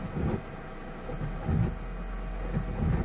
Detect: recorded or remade recorded